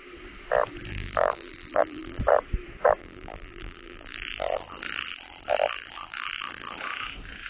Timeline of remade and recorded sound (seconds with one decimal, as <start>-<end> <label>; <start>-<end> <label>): 0.0-0.9 recorded; 0.9-2.2 remade; 2.2-3.0 recorded; 3.0-6.8 remade; 6.8-7.5 recorded